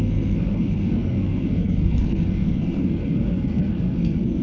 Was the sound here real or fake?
fake